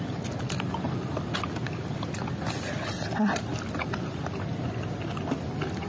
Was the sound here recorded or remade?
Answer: recorded